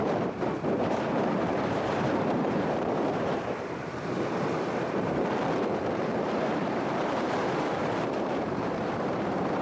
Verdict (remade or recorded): remade